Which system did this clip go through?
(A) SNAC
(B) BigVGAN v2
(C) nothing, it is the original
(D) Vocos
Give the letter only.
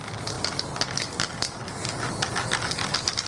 C